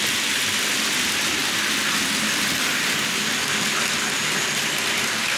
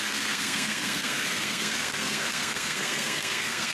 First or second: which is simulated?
second